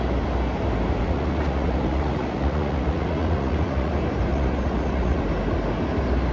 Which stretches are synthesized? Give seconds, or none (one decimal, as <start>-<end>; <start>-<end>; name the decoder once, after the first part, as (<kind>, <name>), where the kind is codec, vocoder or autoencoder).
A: 1.0-3.9 (vocoder, Vocos); 4.3-5.2